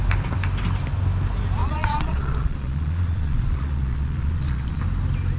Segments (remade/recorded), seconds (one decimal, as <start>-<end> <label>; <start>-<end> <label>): 0.0-1.6 recorded; 1.6-4.8 remade; 4.8-5.4 recorded

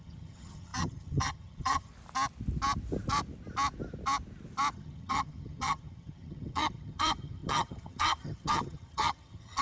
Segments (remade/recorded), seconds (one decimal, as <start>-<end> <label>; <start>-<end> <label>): 0.0-1.9 remade; 1.9-4.7 recorded; 4.7-9.6 remade

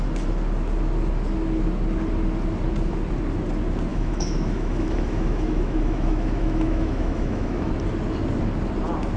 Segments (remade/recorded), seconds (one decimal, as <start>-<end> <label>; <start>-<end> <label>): 0.0-3.9 recorded; 3.9-7.7 remade; 7.7-9.2 recorded

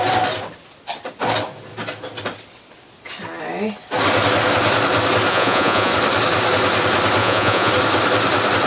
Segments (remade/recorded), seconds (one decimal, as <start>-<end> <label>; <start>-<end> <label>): 0.0-5.3 recorded; 5.3-5.9 remade; 5.9-7.2 recorded; 7.2-7.7 remade; 7.7-8.7 recorded

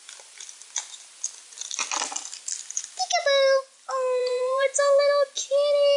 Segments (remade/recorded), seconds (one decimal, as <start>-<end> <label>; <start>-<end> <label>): 0.0-4.2 recorded; 4.2-5.0 remade; 5.0-6.0 recorded